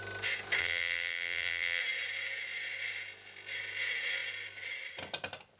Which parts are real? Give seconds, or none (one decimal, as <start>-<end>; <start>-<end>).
0.0-0.6; 1.8-5.6